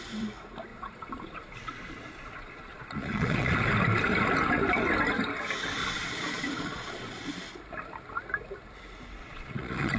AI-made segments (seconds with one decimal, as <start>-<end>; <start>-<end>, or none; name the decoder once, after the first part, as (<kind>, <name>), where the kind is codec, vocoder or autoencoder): 0.7-3.6 (vocoder, Vocos); 5.8-7.4; 9.2-10.0